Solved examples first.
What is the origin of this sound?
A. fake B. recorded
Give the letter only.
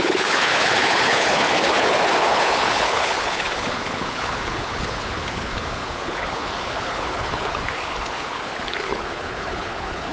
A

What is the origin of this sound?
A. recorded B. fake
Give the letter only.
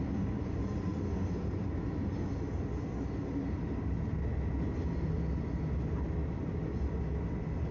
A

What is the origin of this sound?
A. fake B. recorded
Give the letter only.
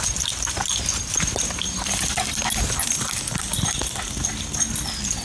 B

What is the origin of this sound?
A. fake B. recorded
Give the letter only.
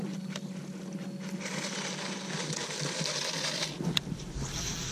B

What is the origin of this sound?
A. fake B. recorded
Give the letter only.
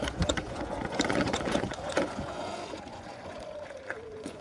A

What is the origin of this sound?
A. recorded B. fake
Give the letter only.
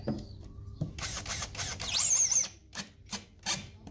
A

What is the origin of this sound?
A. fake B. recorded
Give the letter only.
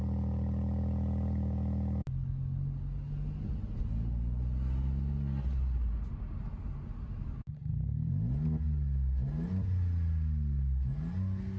B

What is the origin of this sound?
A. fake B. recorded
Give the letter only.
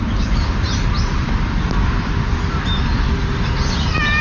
B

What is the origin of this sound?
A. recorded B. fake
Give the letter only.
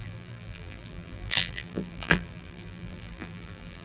B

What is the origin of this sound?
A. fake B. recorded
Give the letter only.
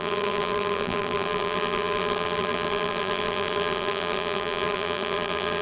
A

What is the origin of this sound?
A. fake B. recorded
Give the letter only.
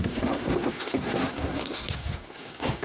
A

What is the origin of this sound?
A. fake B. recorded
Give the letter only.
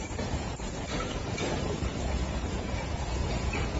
A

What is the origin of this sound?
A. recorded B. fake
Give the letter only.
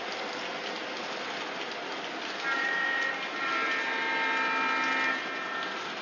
A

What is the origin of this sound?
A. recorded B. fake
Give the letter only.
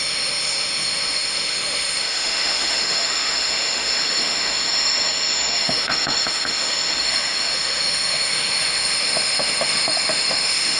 B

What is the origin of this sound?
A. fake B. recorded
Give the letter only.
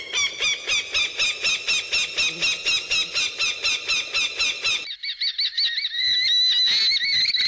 B